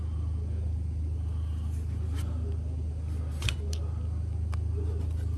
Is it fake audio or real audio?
real